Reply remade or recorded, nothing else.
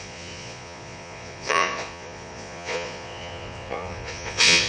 remade